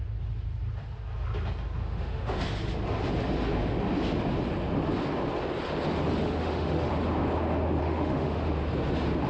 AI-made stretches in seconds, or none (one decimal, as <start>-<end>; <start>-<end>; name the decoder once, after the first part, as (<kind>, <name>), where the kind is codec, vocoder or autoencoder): 1.8-2.4 (autoencoder, DAC-VAE); 6.2-6.9; 7.8-8.4